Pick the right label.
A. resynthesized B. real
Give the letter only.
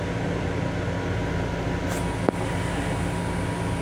B